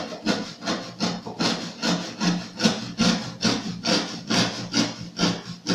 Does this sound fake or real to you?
real